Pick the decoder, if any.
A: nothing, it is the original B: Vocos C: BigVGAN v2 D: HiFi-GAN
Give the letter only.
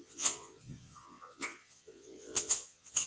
B